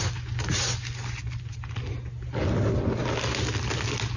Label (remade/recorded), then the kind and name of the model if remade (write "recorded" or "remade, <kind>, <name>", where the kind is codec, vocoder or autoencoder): recorded